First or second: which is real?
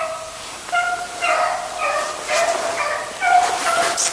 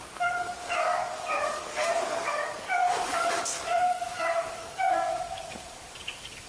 first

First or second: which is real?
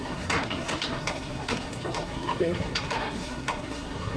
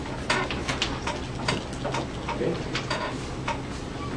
second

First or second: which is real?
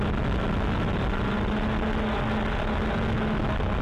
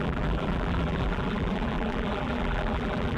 first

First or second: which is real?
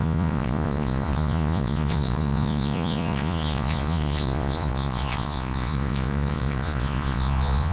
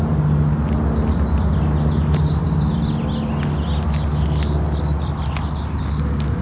second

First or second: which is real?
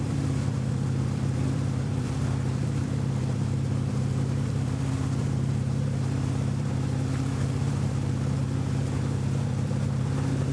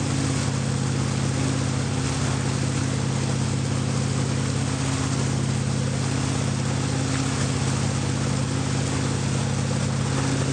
second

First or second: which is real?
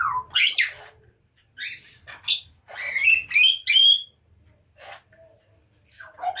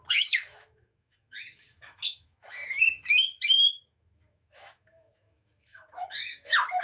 first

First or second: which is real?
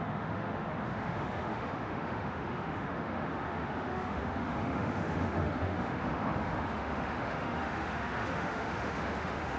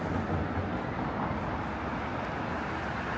second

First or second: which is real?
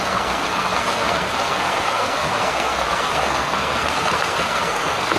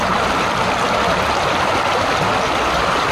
second